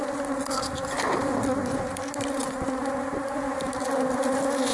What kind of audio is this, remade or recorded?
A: recorded